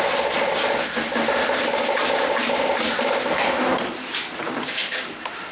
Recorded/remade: recorded